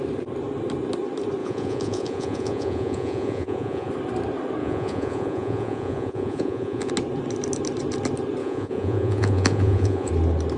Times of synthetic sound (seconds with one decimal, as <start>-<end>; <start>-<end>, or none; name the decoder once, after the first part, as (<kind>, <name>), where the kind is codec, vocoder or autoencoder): 1.4-3.9 (vocoder, Vocos); 4.6-6.9; 8.4-10.1